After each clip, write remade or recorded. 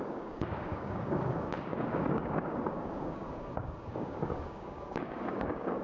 remade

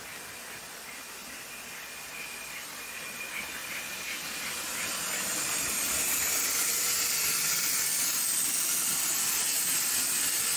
recorded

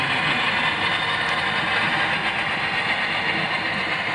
recorded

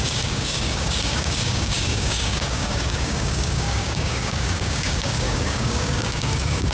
remade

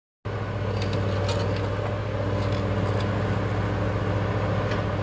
recorded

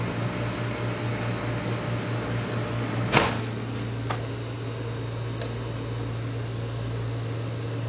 recorded